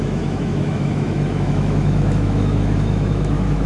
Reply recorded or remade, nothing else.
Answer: remade